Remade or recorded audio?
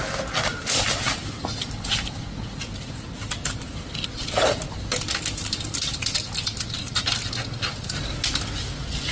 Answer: recorded